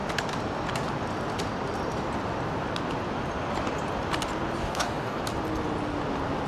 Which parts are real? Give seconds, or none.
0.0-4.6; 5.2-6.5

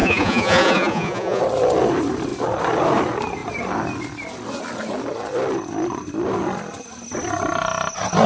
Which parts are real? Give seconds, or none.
1.4-8.3

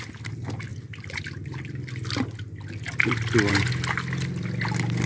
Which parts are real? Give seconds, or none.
0.0-5.1

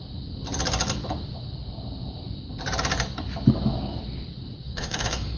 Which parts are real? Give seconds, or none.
0.0-4.6